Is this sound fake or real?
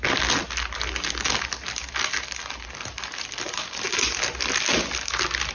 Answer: real